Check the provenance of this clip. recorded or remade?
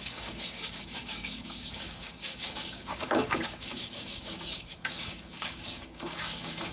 remade